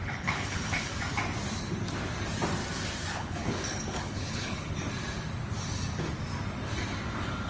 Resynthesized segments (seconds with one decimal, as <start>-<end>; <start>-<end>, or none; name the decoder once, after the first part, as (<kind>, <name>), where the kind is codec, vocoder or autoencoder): 0.0-0.9 (codec, HILCodec); 3.1-4.8